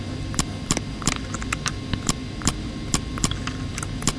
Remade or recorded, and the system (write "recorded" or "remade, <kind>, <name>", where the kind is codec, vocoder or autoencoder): recorded